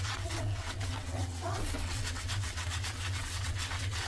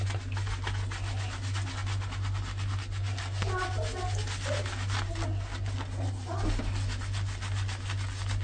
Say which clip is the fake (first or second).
first